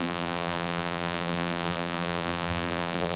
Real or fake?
fake